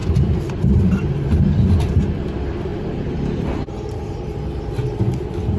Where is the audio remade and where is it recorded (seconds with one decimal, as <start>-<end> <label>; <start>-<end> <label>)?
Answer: 0.0-2.0 remade; 2.0-2.7 recorded; 2.7-3.7 remade; 3.7-5.6 recorded